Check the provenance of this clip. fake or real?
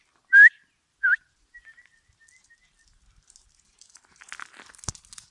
real